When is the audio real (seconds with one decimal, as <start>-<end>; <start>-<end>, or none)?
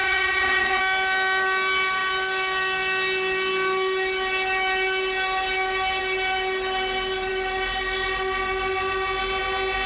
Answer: 0.8-9.9